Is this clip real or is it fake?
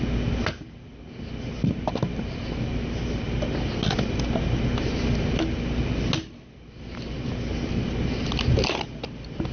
real